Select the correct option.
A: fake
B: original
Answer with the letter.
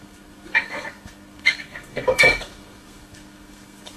A